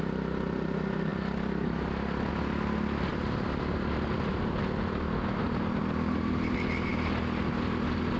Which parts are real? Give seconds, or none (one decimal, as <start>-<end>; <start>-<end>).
0.0-8.2